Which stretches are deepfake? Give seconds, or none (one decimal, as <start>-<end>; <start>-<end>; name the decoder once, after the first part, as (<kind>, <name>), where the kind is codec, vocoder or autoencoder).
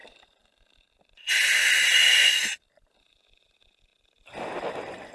none